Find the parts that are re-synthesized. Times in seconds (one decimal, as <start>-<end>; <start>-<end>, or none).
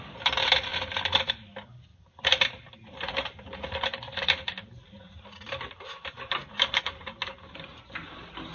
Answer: 0.7-1.3; 1.9-6.8; 7.7-8.5